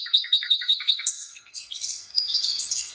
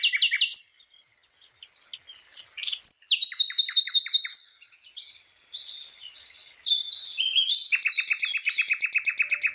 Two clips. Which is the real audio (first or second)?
second